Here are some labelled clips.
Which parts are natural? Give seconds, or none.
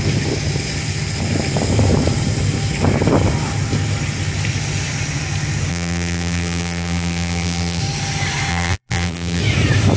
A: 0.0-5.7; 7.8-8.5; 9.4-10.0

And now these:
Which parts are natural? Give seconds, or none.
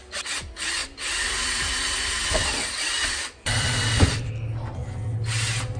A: 0.0-0.8; 4.3-5.8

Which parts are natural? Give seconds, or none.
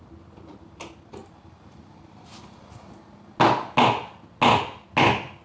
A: 0.0-5.4